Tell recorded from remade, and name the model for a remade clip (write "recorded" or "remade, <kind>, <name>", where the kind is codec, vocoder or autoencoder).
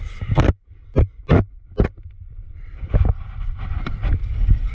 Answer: recorded